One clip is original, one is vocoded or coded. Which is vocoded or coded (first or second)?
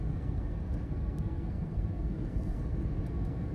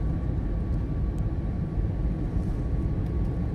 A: first